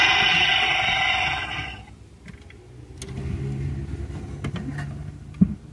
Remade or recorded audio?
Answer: recorded